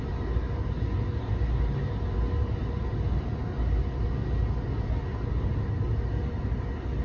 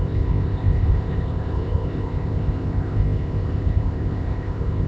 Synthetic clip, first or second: second